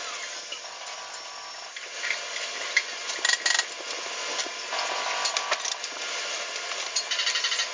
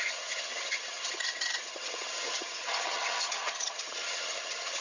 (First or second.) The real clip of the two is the first